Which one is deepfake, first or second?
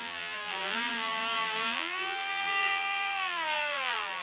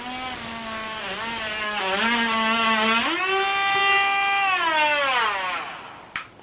first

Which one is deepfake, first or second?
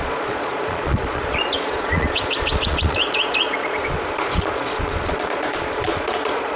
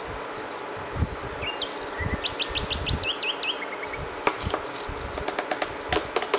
first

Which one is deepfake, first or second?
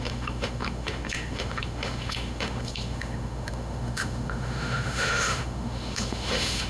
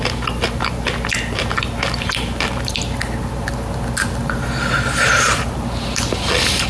first